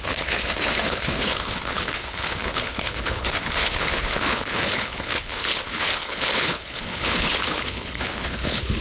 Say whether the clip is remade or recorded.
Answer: remade